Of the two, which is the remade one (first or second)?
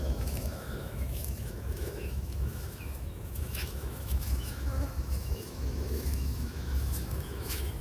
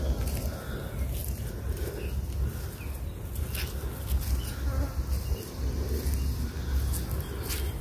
first